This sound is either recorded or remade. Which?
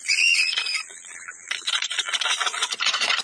remade